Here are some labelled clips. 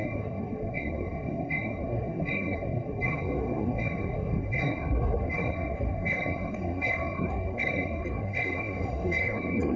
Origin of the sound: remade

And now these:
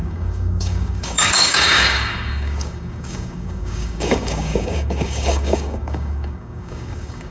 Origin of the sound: remade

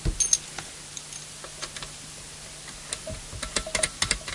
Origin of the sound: recorded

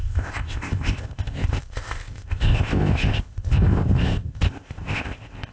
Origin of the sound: remade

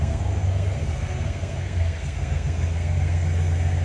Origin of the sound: remade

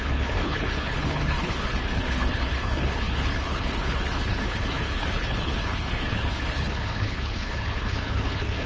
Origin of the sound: remade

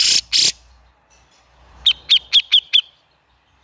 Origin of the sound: recorded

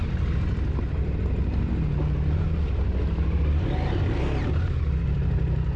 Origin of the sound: recorded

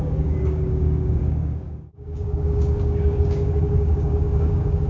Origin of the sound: remade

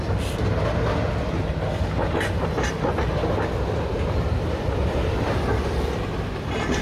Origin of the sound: recorded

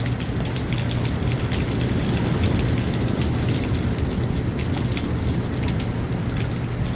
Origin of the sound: recorded